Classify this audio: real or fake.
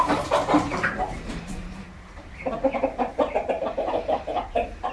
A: fake